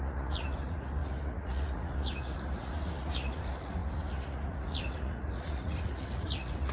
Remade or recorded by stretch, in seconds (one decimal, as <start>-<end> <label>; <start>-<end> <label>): 0.0-6.7 remade

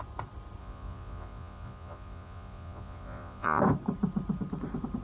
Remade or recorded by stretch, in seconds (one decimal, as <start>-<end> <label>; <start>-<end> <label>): 0.0-0.6 recorded; 0.6-3.6 remade; 3.6-5.0 recorded

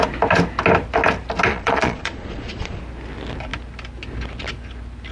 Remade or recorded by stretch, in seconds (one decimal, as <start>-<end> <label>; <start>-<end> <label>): 0.0-1.5 recorded; 1.5-2.8 remade; 2.8-5.1 recorded